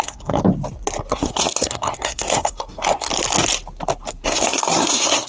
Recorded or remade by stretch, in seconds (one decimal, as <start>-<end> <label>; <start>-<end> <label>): 0.0-0.4 remade; 0.4-1.1 recorded; 1.1-3.1 remade; 3.1-4.1 recorded; 4.1-5.3 remade